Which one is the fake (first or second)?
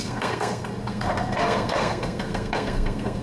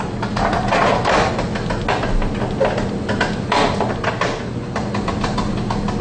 first